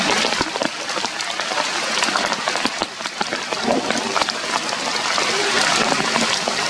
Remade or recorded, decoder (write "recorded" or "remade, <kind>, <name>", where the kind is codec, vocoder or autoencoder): recorded